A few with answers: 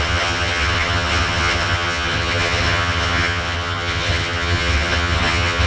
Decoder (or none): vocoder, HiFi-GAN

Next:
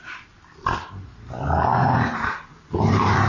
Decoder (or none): none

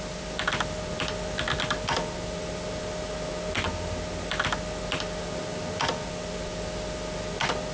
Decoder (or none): none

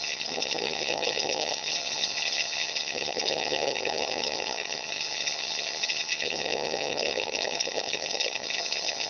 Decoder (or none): vocoder, HiFi-GAN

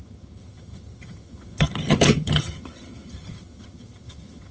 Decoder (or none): vocoder, HiFi-GAN